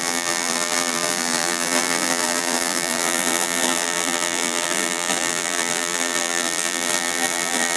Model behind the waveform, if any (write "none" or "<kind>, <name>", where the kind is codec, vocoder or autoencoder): vocoder, BigVGAN v2